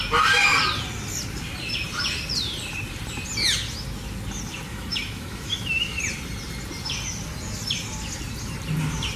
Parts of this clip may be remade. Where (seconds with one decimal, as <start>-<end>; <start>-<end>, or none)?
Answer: 4.7-6.0